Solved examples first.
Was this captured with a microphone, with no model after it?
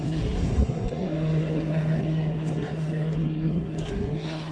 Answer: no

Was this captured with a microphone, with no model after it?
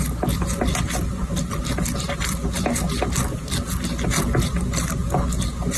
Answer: yes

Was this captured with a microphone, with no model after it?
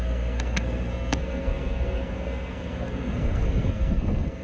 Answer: no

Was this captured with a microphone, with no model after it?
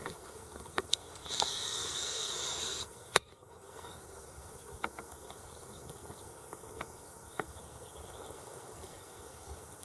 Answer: no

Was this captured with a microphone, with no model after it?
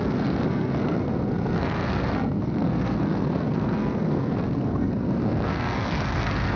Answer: no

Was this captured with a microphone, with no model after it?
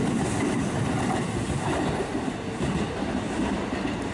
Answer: yes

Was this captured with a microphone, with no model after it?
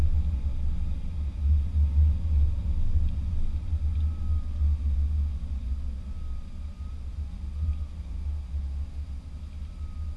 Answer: yes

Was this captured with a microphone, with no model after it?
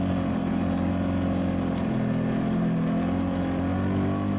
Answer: yes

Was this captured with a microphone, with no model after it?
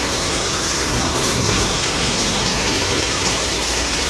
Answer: no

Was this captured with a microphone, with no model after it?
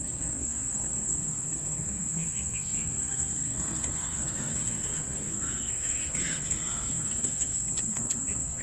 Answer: no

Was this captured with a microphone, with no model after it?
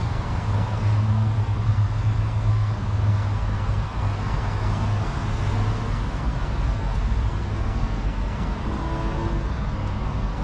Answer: no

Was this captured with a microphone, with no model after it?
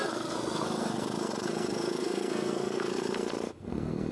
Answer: no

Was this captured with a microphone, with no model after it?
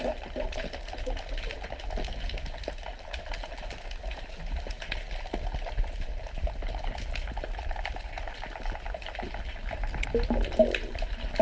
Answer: yes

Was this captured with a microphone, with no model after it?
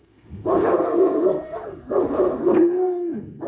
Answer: no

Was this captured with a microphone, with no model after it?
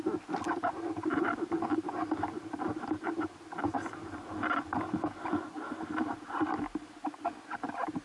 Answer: yes